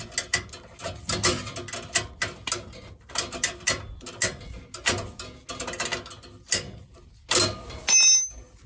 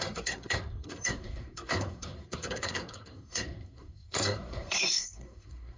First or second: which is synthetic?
second